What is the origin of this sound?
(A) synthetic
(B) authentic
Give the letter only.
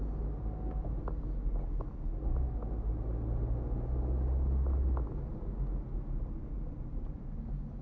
B